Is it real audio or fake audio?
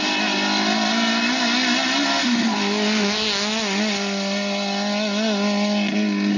real